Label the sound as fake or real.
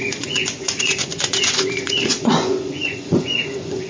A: fake